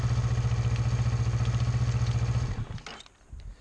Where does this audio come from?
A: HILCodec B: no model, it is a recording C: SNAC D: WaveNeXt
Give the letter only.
B